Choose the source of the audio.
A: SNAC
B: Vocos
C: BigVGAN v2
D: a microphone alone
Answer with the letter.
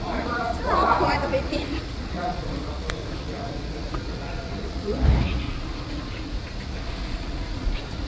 B